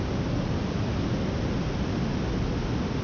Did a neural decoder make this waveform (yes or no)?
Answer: no